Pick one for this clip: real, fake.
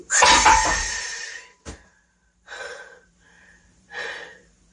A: fake